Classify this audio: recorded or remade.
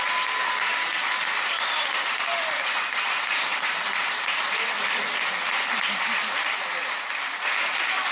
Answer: recorded